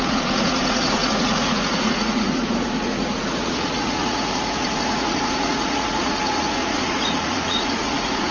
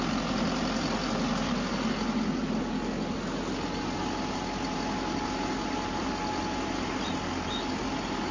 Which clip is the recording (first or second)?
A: second